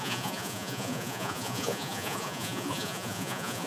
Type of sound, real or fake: fake